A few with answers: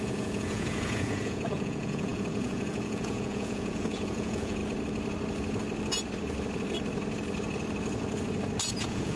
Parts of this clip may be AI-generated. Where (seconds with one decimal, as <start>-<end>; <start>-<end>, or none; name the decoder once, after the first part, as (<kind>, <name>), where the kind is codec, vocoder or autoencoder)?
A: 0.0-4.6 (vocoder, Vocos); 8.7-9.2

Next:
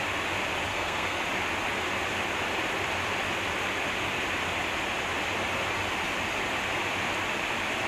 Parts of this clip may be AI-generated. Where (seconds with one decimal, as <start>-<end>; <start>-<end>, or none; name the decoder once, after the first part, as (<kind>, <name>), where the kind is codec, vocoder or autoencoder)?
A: 0.7-1.2 (codec, SNAC)

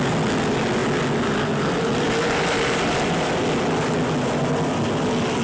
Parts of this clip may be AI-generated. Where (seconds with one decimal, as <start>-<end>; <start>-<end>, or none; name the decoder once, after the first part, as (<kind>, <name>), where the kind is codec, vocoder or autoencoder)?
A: none

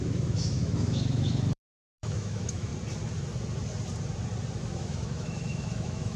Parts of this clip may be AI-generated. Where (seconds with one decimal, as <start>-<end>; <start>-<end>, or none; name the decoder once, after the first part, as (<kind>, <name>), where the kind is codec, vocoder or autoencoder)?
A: 0.0-2.7 (autoencoder, DAC-VAE); 4.5-6.2

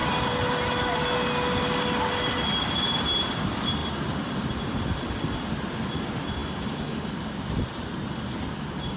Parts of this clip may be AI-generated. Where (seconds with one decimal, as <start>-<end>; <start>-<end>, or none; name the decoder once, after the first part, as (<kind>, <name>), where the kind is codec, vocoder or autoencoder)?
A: none

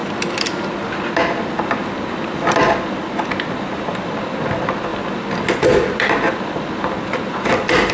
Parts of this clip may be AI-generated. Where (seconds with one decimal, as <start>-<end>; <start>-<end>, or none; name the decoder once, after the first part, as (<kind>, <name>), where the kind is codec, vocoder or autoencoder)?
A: none

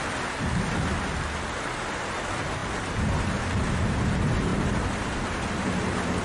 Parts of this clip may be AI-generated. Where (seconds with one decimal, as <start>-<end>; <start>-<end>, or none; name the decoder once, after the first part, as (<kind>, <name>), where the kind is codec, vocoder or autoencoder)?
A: none